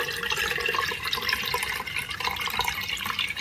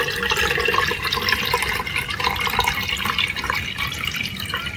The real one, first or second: second